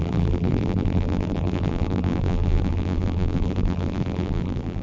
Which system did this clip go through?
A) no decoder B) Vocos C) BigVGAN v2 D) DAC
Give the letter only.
C